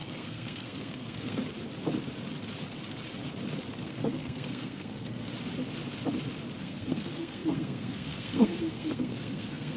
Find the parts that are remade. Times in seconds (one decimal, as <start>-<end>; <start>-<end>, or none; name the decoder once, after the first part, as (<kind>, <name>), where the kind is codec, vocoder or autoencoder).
0.0-1.4 (codec, SNAC); 3.8-5.3; 6.6-9.8